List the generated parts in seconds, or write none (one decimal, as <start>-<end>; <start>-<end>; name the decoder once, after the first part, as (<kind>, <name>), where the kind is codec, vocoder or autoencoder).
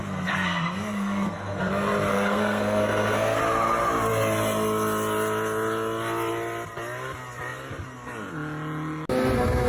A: 0.0-1.6 (codec, SNAC); 2.1-3.4